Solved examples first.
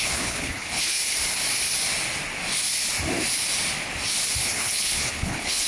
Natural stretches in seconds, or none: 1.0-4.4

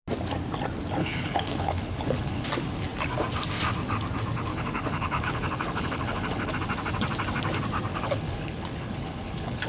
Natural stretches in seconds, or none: 0.0-1.0; 2.5-4.5; 6.5-7.9

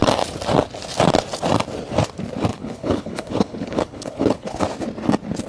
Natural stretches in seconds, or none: 0.0-2.5; 4.6-5.5

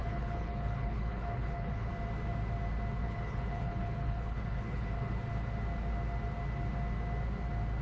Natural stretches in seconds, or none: 1.9-3.0; 5.1-7.8

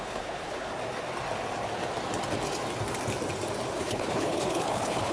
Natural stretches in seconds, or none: 0.7-3.8

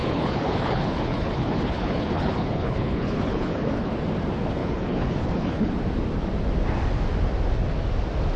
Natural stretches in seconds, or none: 3.9-4.6; 5.7-8.4

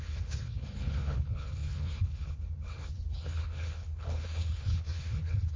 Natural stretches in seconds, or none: none

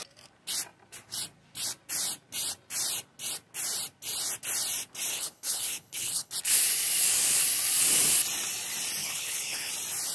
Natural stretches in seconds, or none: 0.0-5.1; 6.3-9.0; 9.7-10.1